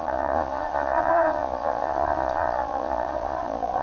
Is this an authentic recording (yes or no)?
no